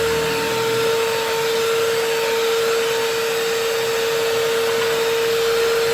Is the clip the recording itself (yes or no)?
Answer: yes